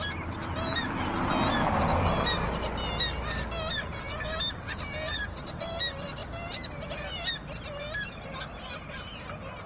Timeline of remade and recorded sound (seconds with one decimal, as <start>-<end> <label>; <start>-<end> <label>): 0.0-9.7 recorded